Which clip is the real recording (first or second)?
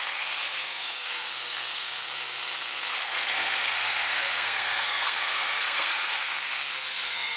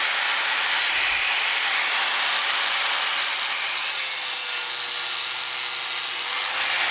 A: second